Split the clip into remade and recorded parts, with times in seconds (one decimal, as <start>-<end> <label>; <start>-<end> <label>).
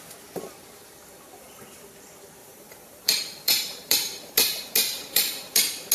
0.0-2.4 recorded; 2.4-5.9 remade